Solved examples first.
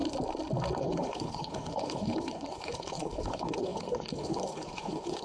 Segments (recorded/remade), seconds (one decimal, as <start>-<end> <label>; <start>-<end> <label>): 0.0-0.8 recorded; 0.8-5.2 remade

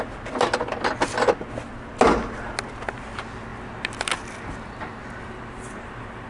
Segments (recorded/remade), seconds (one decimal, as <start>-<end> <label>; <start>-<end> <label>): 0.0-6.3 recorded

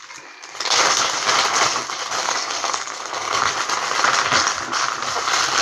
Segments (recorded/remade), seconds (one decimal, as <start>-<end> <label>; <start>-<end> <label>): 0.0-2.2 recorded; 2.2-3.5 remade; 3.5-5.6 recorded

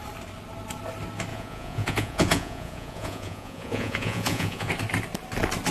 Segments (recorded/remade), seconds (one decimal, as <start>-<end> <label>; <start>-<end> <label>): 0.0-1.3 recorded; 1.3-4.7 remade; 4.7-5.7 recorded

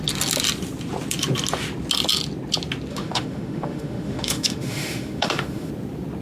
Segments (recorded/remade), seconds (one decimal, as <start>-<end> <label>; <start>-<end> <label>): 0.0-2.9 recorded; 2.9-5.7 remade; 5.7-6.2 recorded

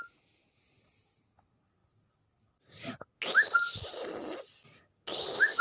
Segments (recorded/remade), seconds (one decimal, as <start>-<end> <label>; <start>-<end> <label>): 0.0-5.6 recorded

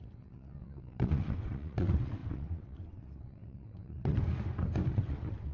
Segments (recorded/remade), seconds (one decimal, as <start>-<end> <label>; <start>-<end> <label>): 0.0-4.2 remade; 4.2-4.9 recorded; 4.9-5.5 remade